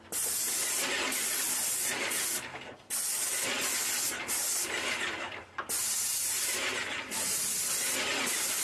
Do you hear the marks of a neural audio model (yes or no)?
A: no